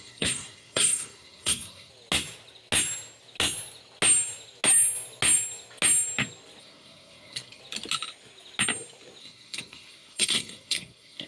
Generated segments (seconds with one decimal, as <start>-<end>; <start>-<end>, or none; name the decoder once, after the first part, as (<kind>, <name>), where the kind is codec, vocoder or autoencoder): 0.0-1.9 (codec, SNAC); 6.6-7.6; 9.2-11.3